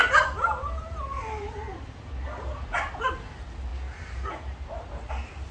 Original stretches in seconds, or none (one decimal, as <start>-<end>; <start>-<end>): 0.0-5.5